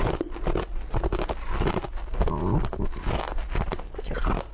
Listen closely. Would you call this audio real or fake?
real